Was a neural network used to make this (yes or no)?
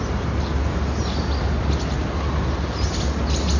no